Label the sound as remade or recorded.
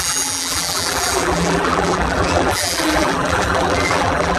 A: remade